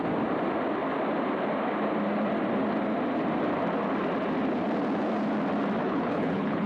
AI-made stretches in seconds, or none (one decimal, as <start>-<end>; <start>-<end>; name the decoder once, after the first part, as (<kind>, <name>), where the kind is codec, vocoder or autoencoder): 5.8-6.7 (codec, HILCodec)